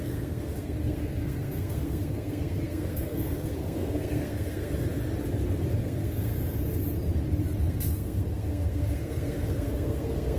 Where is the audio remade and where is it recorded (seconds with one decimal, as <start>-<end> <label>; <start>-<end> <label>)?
0.0-4.7 remade; 4.7-5.8 recorded; 5.8-6.3 remade; 6.3-7.6 recorded; 7.6-10.4 remade

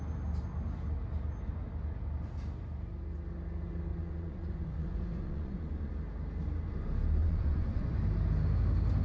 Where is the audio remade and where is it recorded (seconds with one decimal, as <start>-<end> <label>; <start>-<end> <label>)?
0.0-3.9 recorded; 3.9-5.9 remade; 5.9-7.2 recorded; 7.2-8.0 remade; 8.0-9.0 recorded

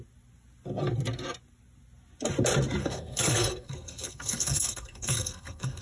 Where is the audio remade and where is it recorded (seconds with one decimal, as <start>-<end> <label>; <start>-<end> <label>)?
0.0-2.8 recorded; 2.8-5.8 remade

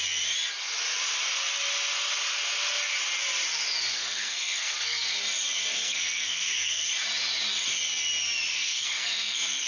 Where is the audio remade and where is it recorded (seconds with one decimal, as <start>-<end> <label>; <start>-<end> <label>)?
0.0-3.9 recorded; 3.9-5.1 remade; 5.1-5.7 recorded; 5.7-6.9 remade; 6.9-8.5 recorded; 8.5-9.7 remade

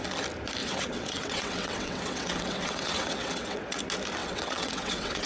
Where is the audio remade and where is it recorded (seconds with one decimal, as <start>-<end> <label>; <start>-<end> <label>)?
0.0-0.6 recorded; 0.6-3.8 remade; 3.8-4.2 recorded; 4.2-5.3 remade